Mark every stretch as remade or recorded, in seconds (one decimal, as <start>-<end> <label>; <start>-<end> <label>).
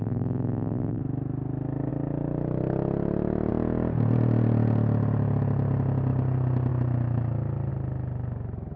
0.0-1.0 remade; 1.0-8.8 recorded